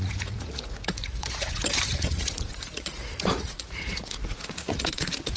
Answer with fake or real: fake